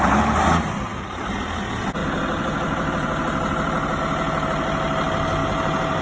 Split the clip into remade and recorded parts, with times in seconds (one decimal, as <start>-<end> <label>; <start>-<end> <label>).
0.0-2.0 recorded; 2.0-4.0 remade; 4.0-6.0 recorded